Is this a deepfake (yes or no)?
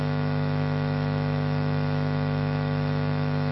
yes